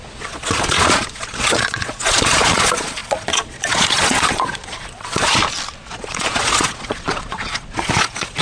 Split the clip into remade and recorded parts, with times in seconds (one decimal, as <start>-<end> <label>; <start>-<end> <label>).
0.0-5.4 remade; 5.4-5.9 recorded; 5.9-8.4 remade